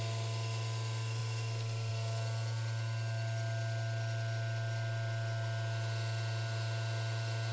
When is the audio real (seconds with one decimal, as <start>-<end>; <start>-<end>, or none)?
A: 0.0-7.5